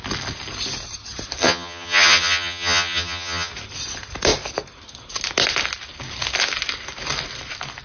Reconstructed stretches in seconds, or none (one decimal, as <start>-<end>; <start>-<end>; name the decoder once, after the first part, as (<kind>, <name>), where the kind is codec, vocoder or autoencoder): 1.4-3.5 (vocoder, HiFi-GAN)